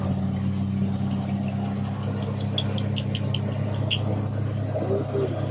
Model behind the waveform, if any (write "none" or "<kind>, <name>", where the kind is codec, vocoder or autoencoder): none